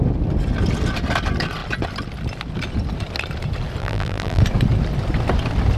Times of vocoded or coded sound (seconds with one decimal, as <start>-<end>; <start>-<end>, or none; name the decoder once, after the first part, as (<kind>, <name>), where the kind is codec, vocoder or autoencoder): 3.8-4.4 (vocoder, BigVGAN v2)